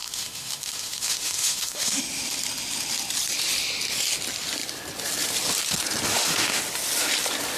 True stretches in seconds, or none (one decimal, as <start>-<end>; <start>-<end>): 2.0-6.1; 6.6-7.6